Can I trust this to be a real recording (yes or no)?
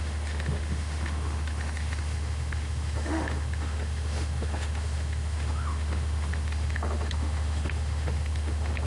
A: no